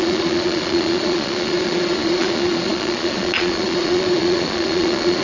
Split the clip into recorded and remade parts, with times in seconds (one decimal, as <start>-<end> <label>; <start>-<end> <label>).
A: 0.0-5.2 remade